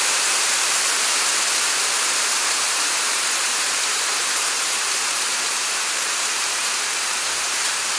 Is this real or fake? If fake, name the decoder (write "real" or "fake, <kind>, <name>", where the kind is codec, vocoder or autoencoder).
fake, vocoder, BigVGAN v2